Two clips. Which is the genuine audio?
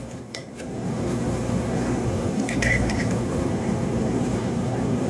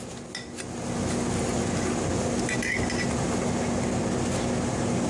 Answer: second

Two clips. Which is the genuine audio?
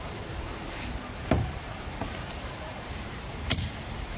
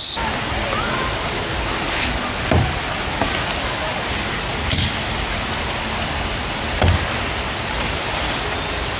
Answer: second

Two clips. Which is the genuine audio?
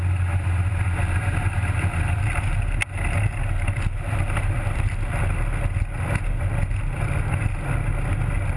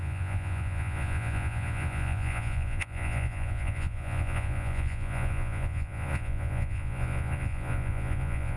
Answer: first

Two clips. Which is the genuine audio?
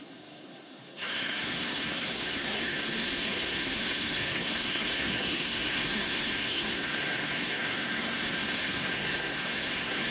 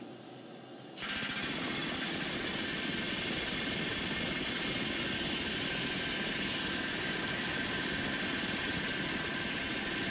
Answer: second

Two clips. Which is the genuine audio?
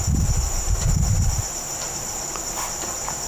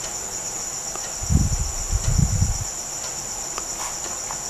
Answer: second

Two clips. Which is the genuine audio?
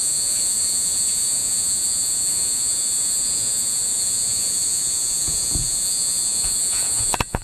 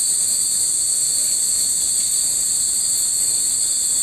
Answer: second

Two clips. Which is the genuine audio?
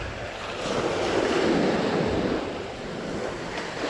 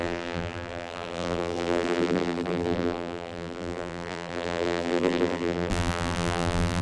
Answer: first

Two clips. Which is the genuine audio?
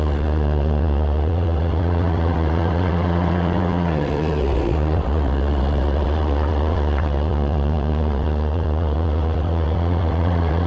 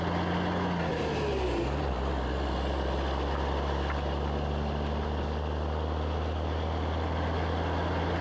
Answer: second